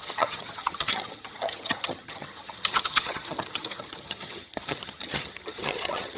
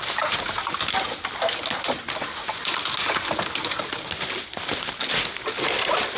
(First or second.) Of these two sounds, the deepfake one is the first